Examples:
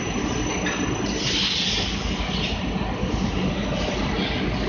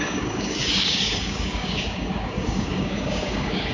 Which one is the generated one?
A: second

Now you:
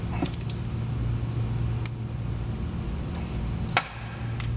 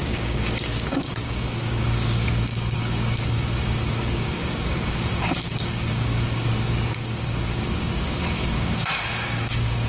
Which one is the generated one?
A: second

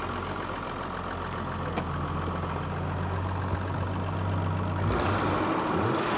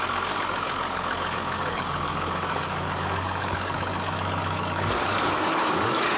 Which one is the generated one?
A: second